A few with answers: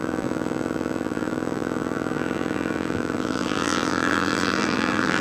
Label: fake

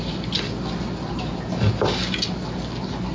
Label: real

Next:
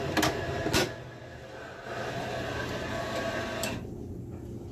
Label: real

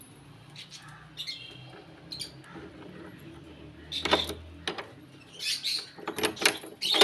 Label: real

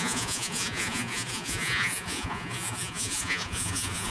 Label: fake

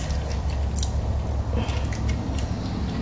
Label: real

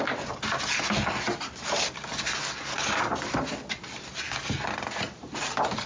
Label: real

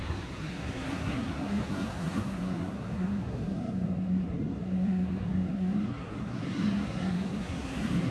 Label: fake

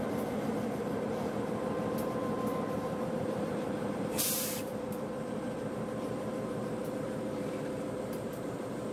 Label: fake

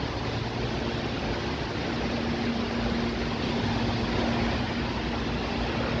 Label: real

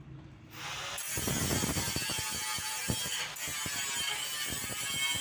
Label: real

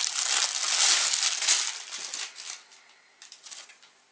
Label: real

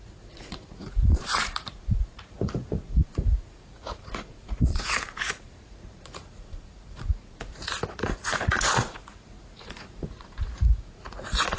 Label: fake